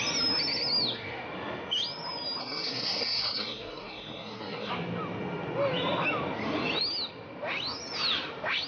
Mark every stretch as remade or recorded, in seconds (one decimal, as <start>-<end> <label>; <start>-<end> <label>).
0.0-2.4 recorded; 2.4-4.7 remade; 4.7-8.7 recorded